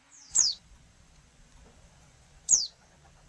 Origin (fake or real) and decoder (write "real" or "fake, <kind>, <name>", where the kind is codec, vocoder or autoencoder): fake, vocoder, Vocos